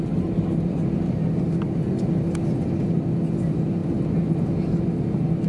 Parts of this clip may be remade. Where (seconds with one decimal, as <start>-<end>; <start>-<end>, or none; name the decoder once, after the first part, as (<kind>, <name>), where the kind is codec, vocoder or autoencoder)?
none